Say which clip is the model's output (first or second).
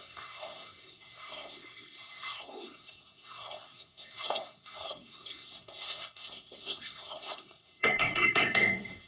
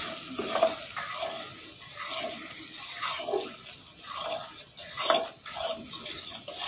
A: first